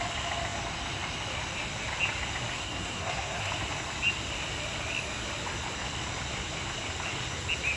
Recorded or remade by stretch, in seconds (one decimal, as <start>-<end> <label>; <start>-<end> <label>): 0.0-2.5 recorded; 2.5-3.5 remade; 3.5-7.8 recorded